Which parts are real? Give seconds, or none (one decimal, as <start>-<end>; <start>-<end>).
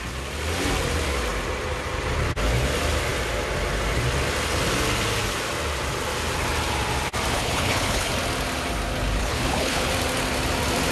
0.0-7.3; 8.1-9.2; 9.9-10.9